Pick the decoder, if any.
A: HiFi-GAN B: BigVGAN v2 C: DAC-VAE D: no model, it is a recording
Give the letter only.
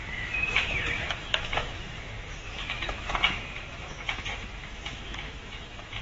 C